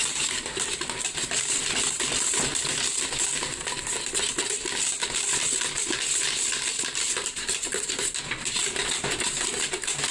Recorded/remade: remade